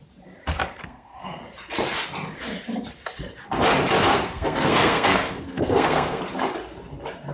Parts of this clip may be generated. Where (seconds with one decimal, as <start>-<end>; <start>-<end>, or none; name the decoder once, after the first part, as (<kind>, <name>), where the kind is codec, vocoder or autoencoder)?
0.8-1.4 (codec, SNAC); 4.1-6.2